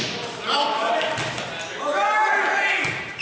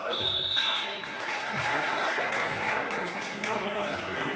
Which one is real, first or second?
first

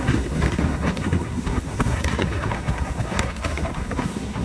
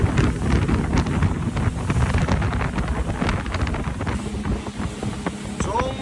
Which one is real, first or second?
second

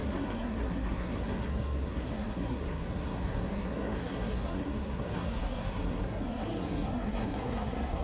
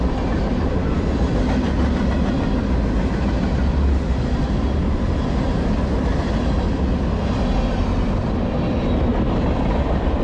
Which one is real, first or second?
second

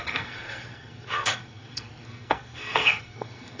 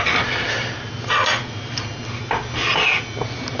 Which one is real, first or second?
second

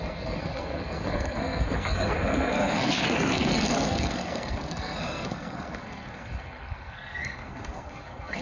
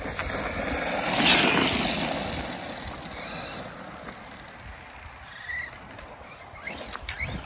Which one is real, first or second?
second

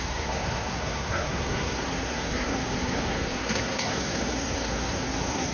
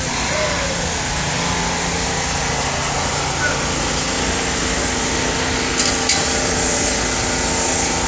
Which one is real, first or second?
second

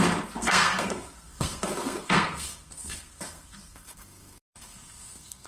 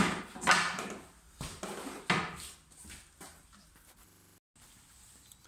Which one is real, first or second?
second